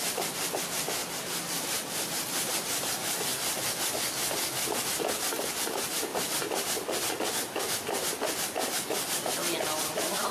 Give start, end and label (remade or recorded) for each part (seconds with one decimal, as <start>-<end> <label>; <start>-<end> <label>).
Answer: 0.0-3.3 recorded; 3.3-3.8 remade; 3.8-4.2 recorded; 4.2-4.8 remade; 4.8-10.3 recorded